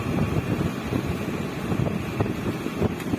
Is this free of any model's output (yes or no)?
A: yes